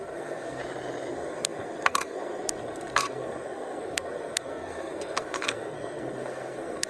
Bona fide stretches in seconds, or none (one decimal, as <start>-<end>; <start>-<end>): 0.6-1.1